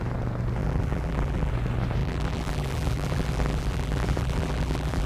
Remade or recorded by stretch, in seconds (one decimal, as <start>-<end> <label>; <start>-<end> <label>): 0.0-0.6 recorded; 0.6-1.5 remade; 1.5-2.0 recorded; 2.0-5.1 remade